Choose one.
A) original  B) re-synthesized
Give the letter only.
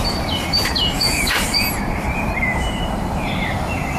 B